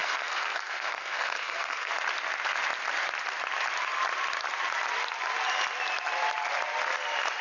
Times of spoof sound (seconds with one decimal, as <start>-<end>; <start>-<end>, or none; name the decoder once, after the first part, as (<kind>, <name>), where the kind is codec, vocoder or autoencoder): 0.0-1.9 (codec, SNAC)